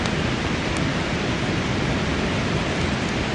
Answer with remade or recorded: remade